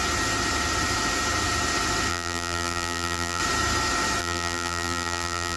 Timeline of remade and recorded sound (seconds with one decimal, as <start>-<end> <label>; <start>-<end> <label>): 0.0-2.1 recorded; 2.1-3.4 remade; 3.4-4.2 recorded; 4.2-5.6 remade